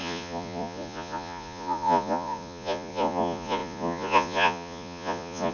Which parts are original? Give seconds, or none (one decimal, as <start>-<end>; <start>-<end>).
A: none